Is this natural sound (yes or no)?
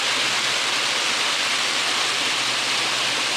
yes